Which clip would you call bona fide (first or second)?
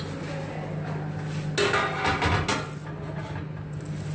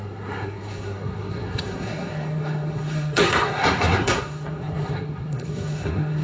first